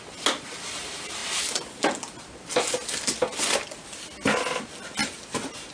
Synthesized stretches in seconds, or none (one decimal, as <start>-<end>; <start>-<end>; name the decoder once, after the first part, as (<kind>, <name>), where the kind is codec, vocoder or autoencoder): none